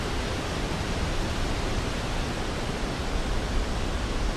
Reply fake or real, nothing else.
real